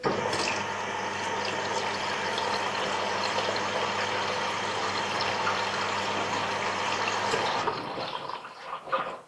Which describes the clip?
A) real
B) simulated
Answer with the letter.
A